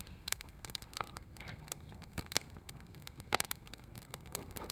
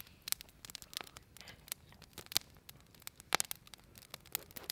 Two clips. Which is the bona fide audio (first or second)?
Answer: second